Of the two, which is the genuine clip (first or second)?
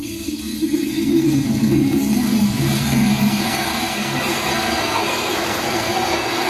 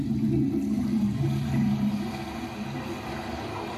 second